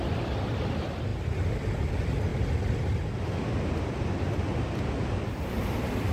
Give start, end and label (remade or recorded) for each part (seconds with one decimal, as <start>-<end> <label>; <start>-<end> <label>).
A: 0.0-6.1 recorded